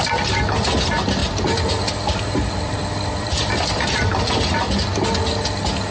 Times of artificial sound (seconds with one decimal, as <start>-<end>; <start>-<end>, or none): 1.2-4.7